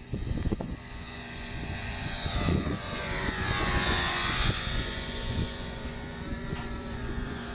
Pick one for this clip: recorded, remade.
remade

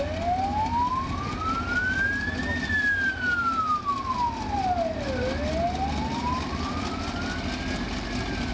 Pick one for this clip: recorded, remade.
recorded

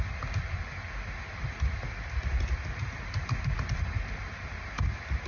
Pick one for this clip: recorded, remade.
recorded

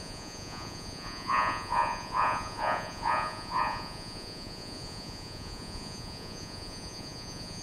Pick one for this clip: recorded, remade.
remade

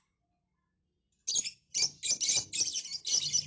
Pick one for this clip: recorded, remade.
recorded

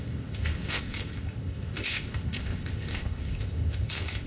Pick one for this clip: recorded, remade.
remade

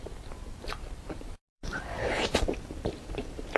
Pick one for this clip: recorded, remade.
remade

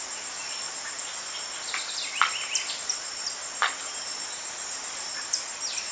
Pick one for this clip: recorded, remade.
recorded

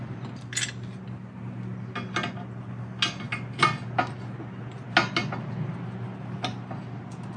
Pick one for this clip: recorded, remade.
recorded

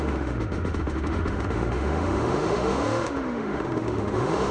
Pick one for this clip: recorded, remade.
remade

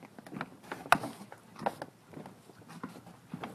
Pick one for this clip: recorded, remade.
recorded